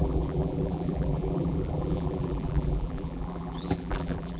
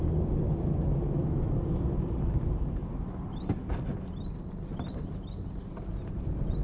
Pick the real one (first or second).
second